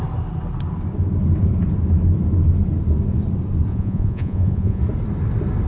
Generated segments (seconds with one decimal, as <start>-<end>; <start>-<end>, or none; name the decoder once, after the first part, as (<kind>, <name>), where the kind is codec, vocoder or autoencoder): 3.7-4.8 (vocoder, Vocos)